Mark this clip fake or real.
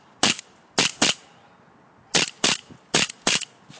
real